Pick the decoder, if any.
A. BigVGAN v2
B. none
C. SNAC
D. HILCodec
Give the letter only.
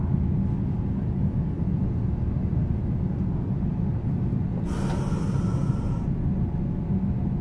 B